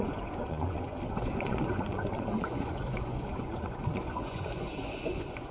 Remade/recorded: remade